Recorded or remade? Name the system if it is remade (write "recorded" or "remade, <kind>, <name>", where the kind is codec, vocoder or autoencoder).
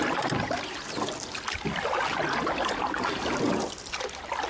recorded